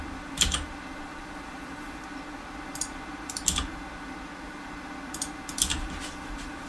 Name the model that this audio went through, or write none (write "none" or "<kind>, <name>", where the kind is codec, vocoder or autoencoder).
vocoder, BigVGAN v2